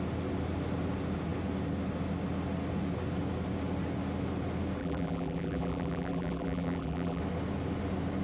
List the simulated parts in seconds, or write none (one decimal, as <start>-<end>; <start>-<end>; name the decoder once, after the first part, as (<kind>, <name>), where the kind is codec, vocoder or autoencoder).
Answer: 4.8-7.2 (vocoder, BigVGAN v2)